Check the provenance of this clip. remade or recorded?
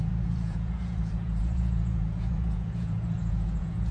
remade